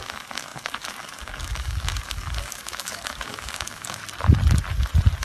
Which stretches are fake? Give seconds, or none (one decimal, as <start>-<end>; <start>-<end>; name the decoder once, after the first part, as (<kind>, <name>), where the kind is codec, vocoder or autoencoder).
0.0-4.0 (codec, DAC)